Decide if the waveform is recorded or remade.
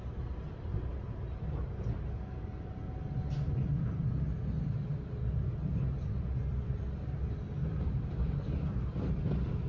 recorded